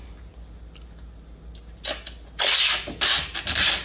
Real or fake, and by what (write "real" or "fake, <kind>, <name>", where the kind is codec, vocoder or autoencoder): real